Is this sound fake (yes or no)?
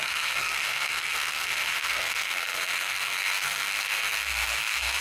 yes